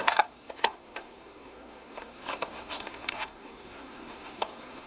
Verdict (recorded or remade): remade